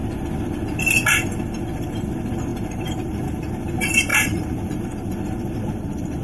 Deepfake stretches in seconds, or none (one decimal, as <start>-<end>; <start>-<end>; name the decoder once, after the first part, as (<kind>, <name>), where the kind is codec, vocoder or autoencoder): 2.5-3.5 (vocoder, BigVGAN v2); 4.1-4.8